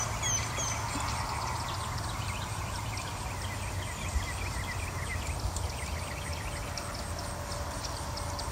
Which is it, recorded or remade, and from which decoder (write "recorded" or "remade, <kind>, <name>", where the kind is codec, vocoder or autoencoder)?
recorded